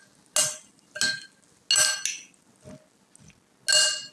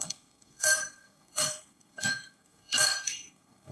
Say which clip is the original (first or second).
first